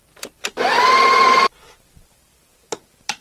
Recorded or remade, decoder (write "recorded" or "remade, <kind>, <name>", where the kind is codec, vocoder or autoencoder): remade, vocoder, BigVGAN v2